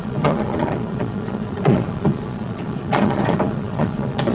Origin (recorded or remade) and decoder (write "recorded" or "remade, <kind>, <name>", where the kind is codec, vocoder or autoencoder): remade, vocoder, Vocos